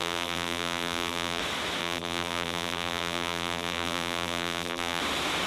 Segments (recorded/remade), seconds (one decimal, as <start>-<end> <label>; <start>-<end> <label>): 0.0-1.4 remade; 1.4-1.8 recorded; 1.8-5.0 remade; 5.0-5.5 recorded